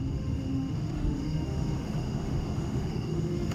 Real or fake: fake